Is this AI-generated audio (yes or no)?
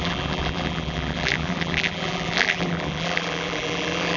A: yes